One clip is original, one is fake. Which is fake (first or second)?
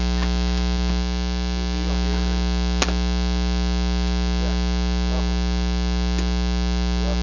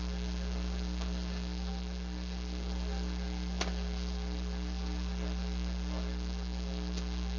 second